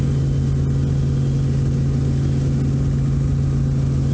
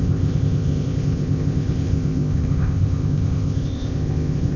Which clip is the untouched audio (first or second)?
first